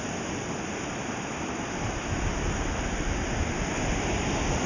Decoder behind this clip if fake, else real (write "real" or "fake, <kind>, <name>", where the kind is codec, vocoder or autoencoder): real